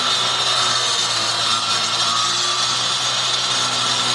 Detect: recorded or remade recorded